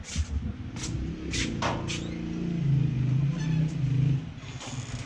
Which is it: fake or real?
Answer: real